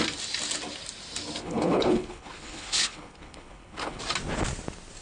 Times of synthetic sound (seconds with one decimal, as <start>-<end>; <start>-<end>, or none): 1.4-4.0